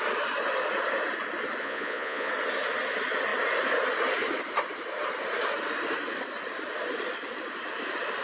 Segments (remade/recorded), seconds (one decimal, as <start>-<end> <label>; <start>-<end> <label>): 0.0-1.6 recorded; 1.6-2.3 remade; 2.3-8.2 recorded

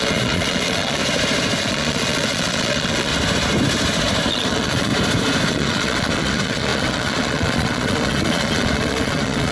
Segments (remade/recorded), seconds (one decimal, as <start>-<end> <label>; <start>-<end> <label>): 0.0-1.0 remade; 1.0-1.6 recorded; 1.6-3.1 remade; 3.1-4.3 recorded; 4.3-4.9 remade; 4.9-5.5 recorded; 5.5-9.5 remade

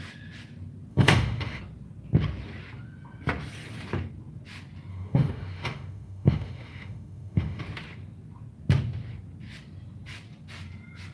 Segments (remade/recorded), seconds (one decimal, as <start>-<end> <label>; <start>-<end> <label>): 0.0-0.9 recorded; 0.9-1.6 remade; 1.6-4.9 recorded; 4.9-7.6 remade; 7.6-11.1 recorded

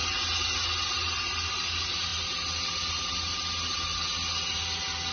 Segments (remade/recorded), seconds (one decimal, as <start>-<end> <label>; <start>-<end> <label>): 0.0-5.1 recorded

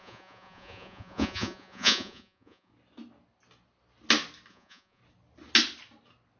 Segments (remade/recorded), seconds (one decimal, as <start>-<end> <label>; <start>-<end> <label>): 0.0-2.7 remade; 2.7-4.5 recorded; 4.5-5.0 remade; 5.0-6.4 recorded

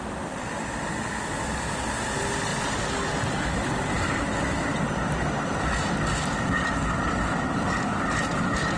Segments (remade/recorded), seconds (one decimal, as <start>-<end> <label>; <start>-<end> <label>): 0.0-8.8 recorded

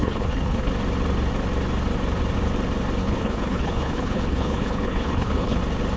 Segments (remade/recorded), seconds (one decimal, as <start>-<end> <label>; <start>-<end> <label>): 0.0-0.7 remade; 0.7-3.0 recorded; 3.0-5.6 remade; 5.6-6.0 recorded

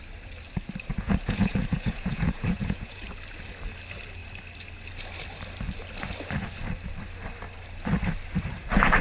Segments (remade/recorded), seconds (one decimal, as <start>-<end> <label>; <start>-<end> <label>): 0.0-0.9 recorded; 0.9-3.0 remade; 3.0-9.0 recorded